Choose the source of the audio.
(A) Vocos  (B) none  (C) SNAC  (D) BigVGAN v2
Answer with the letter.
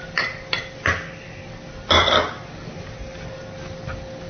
B